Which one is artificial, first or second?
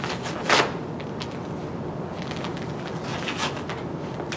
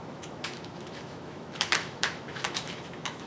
second